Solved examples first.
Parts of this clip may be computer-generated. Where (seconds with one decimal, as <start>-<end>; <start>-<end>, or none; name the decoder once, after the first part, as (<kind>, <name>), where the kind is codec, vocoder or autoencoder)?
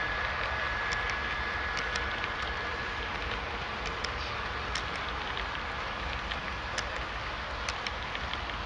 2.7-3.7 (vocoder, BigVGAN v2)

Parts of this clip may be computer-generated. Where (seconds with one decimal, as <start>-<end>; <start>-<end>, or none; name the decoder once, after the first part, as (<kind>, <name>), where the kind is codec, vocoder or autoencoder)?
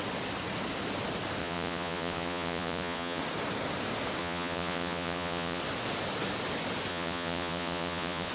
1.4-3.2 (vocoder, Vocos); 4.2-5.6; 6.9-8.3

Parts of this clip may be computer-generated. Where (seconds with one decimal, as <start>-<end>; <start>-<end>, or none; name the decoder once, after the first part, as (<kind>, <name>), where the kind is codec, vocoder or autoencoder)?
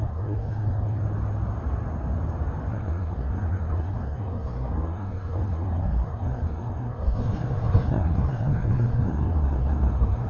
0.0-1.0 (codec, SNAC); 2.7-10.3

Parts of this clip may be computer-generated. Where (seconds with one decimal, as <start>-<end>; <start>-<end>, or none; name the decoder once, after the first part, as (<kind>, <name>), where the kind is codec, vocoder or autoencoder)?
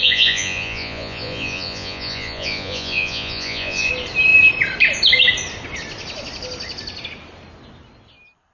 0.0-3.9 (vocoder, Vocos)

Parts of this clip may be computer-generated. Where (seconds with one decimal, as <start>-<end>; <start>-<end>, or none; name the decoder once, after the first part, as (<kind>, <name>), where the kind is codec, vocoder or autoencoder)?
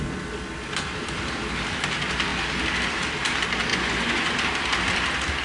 3.7-4.3 (vocoder, Vocos)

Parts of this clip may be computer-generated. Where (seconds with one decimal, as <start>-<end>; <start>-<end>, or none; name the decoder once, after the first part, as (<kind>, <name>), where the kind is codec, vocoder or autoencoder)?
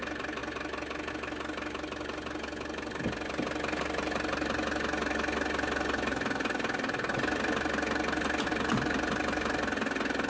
none